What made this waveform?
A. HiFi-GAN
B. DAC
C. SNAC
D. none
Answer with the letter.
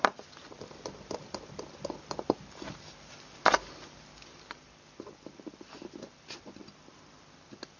D